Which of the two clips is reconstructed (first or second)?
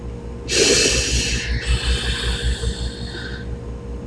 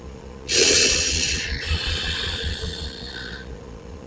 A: second